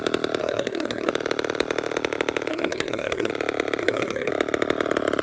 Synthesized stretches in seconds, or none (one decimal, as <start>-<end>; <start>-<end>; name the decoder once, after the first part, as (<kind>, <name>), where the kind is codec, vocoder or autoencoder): 0.4-1.1 (codec, SNAC); 2.5-3.3; 3.8-4.3